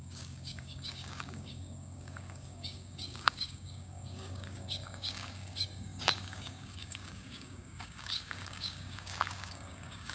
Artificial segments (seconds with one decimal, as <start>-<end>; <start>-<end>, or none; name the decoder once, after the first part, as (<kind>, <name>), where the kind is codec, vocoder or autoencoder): 0.0-10.1 (codec, DAC)